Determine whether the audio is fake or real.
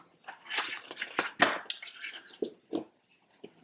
real